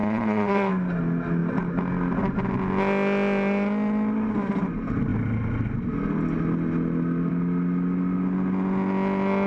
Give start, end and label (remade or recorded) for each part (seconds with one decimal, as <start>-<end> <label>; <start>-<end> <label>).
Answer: 0.0-0.7 remade; 0.7-9.5 recorded